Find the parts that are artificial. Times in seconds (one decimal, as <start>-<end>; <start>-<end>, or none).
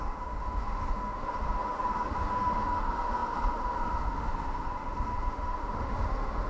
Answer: 0.0-6.5